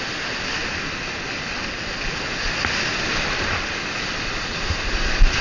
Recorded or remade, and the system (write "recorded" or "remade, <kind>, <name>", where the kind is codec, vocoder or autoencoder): recorded